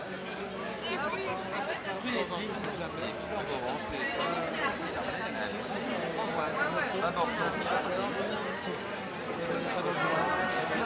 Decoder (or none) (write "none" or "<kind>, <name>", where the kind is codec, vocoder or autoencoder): none